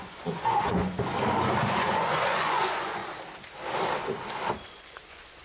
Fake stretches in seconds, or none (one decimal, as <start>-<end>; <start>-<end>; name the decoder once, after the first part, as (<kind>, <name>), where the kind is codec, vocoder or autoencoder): 0.0-1.1 (vocoder, Vocos); 1.6-3.0; 4.7-5.4